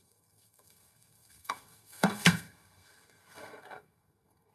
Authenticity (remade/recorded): remade